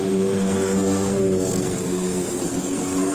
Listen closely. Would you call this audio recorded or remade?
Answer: remade